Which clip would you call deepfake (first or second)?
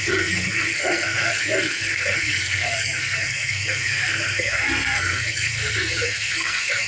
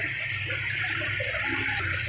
first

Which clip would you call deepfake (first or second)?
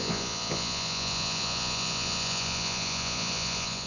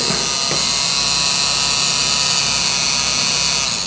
first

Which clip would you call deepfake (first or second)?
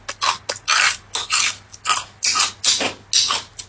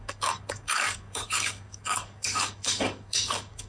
second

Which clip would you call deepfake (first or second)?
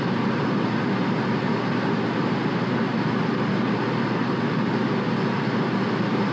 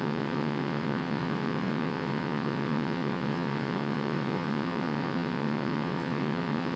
second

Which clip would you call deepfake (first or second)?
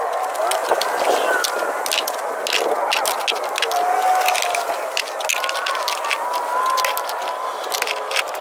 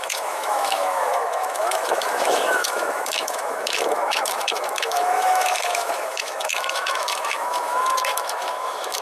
second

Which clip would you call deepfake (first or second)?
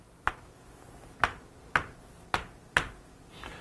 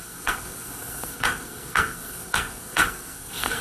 second